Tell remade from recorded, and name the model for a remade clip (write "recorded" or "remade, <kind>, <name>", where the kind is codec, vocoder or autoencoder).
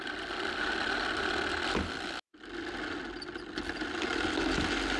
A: recorded